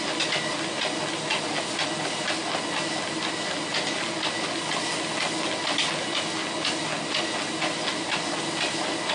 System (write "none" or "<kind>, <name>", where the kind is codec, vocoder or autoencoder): none